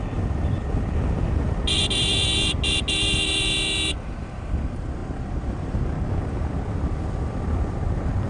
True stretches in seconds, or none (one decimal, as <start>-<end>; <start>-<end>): 0.0-8.3